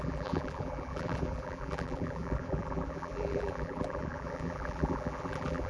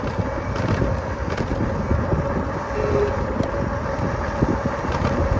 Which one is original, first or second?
second